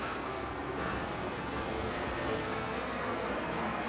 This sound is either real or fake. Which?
fake